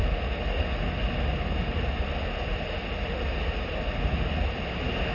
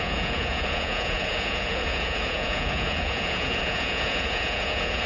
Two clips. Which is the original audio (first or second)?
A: first